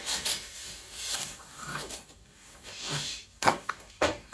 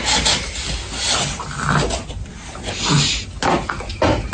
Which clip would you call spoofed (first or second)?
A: first